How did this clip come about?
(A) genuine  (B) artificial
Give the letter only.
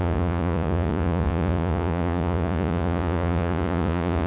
B